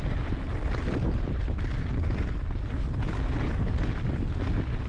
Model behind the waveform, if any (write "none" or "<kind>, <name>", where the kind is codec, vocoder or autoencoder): none